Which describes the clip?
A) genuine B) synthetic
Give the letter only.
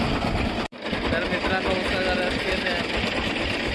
A